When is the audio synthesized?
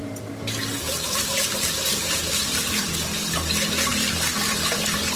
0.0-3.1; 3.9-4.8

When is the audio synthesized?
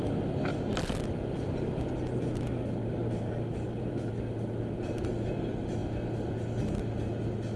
2.8-4.1